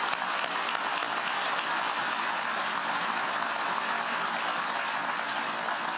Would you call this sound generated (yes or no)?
no